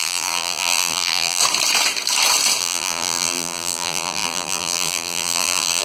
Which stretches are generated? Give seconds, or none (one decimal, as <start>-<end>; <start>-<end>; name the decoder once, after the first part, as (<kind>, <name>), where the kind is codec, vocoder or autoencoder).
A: 0.0-1.4 (vocoder, BigVGAN v2); 2.6-5.8